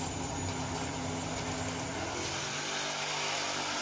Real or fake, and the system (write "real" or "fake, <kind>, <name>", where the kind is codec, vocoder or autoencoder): real